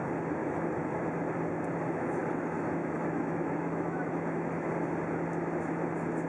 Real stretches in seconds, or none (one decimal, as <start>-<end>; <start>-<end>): 0.0-0.4; 1.0-2.2; 4.7-6.3